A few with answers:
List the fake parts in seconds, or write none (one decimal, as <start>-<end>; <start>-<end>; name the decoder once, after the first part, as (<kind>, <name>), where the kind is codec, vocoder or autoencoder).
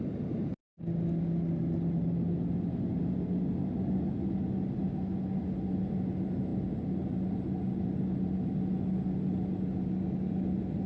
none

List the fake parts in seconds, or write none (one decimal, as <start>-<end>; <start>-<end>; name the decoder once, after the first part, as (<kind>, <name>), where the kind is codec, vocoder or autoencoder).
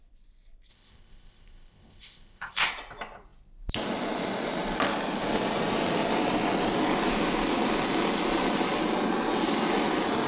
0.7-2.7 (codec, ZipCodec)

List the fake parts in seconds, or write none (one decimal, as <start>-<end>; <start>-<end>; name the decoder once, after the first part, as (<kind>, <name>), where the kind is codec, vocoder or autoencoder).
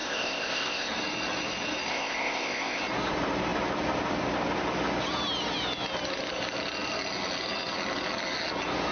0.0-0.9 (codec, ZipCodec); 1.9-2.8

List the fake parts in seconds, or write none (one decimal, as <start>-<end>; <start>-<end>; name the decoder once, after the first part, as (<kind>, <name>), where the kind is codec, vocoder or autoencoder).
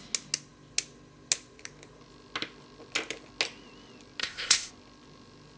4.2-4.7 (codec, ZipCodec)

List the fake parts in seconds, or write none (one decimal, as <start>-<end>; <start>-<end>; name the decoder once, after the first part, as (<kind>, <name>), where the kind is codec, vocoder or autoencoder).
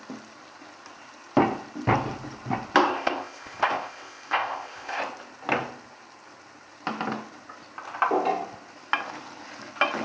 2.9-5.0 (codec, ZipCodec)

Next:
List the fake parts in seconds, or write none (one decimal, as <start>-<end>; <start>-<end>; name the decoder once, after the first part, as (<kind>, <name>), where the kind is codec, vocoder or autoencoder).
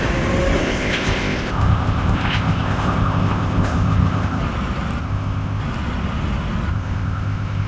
0.6-4.4 (codec, ZipCodec); 5.0-5.6; 6.7-7.7